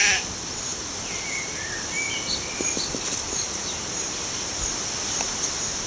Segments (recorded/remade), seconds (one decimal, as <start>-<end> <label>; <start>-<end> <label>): 0.0-5.9 recorded